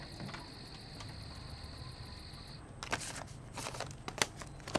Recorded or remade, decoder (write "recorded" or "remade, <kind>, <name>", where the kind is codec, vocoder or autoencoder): recorded